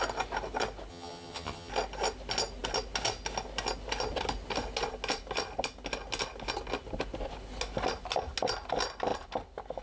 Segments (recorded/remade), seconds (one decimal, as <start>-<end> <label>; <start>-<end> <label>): 0.0-0.9 recorded; 0.9-1.7 remade; 1.7-9.8 recorded